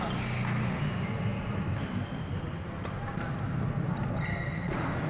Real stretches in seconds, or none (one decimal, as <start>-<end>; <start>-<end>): 0.0-1.3; 2.4-3.0